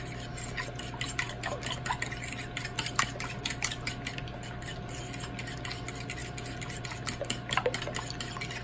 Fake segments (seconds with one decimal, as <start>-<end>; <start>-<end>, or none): none